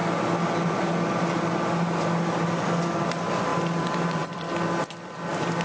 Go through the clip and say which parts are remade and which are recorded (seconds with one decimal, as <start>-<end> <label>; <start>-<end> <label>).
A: 0.0-3.5 recorded; 3.5-4.5 remade; 4.5-5.6 recorded